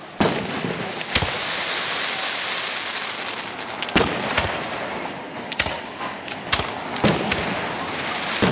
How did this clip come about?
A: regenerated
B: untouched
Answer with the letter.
B